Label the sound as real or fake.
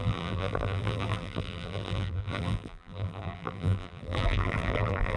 fake